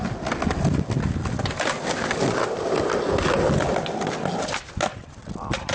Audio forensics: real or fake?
real